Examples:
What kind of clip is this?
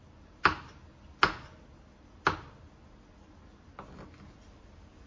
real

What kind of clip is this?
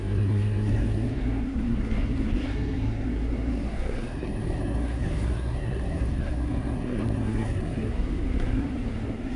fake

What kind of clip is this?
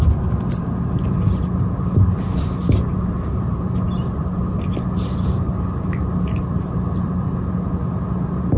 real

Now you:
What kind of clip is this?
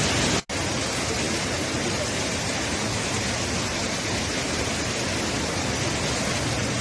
real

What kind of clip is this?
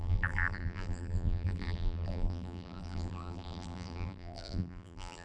fake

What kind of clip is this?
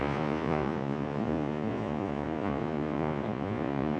fake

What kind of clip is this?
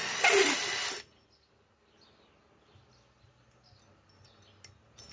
real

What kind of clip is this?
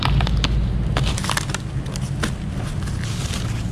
real